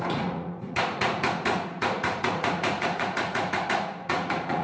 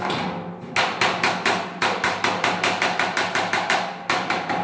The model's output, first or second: first